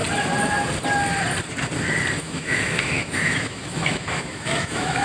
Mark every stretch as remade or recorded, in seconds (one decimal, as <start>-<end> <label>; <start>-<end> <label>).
0.0-2.2 recorded; 2.2-5.0 remade